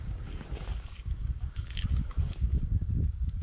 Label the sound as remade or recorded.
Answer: remade